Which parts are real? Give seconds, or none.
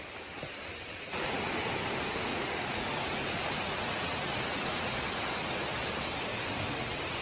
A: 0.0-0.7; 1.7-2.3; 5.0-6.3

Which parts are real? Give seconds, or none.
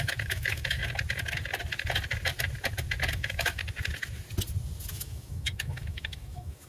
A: 0.8-3.1; 3.6-4.9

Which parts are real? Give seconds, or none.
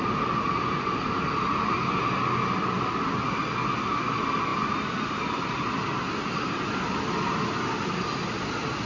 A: 0.0-8.9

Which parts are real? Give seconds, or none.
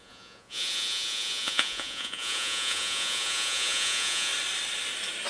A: 4.3-5.3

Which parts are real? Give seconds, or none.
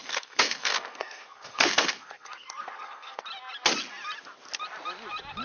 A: 3.2-5.4